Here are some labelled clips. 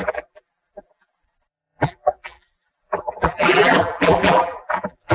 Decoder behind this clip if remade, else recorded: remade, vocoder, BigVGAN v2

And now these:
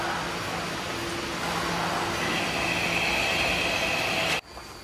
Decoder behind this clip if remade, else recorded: recorded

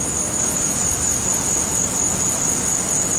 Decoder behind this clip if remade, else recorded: recorded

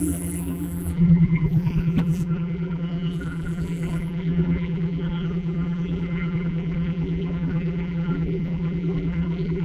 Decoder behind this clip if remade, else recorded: remade, vocoder, BigVGAN v2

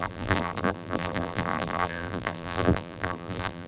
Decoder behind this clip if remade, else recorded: remade, vocoder, BigVGAN v2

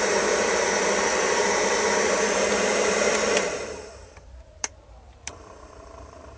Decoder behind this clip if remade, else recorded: remade, vocoder, BigVGAN v2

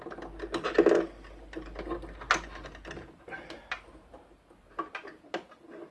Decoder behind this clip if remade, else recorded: recorded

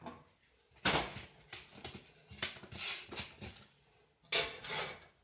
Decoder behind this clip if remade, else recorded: recorded